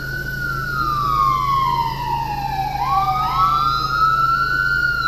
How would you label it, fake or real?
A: real